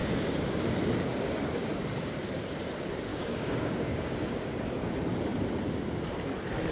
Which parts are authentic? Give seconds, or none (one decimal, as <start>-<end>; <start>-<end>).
0.7-1.1; 1.7-3.1; 4.4-6.7